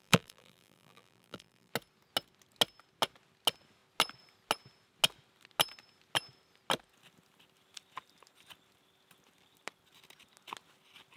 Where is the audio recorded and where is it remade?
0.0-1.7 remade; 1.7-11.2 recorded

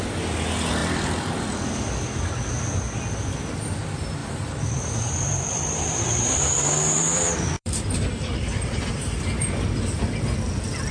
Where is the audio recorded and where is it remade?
0.0-0.8 recorded; 0.8-1.9 remade; 1.9-4.2 recorded; 4.2-7.9 remade; 7.9-10.9 recorded

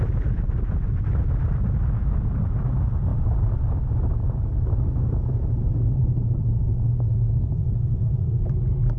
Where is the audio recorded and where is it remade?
0.0-3.1 recorded; 3.1-6.4 remade; 6.4-9.0 recorded